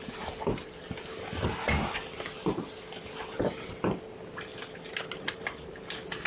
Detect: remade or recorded recorded